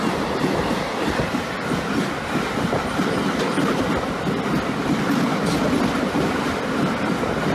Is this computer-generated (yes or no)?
no